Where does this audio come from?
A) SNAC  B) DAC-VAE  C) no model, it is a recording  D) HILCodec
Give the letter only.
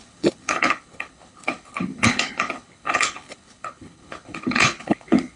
D